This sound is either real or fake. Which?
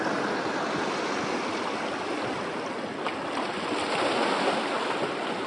real